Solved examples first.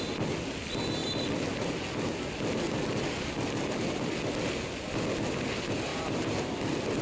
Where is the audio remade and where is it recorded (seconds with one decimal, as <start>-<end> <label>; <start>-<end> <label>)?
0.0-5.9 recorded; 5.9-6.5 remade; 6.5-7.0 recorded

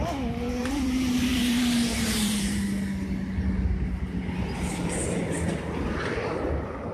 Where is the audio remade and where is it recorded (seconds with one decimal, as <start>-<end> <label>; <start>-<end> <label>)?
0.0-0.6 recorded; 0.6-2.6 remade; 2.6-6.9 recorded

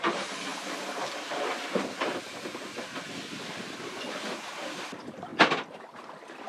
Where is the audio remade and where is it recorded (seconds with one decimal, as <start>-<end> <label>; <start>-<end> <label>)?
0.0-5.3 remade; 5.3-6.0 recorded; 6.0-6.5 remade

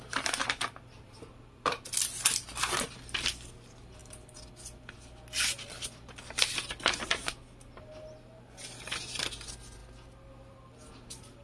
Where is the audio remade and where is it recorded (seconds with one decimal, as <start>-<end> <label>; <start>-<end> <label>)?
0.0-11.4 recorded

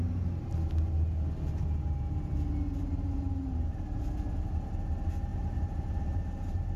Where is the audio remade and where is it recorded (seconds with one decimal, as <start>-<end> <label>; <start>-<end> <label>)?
0.0-5.3 recorded; 5.3-6.8 remade

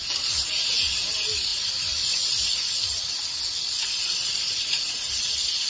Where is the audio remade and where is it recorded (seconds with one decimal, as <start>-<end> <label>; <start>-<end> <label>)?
0.0-1.5 recorded; 1.5-4.9 remade; 4.9-5.7 recorded